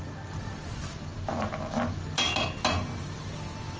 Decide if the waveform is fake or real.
real